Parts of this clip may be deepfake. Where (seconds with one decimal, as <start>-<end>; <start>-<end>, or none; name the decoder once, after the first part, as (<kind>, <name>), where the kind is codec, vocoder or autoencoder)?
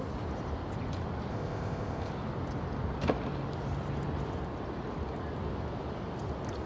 1.3-2.1 (codec, ZipCodec)